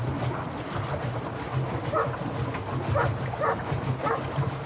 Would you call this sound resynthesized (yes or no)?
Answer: no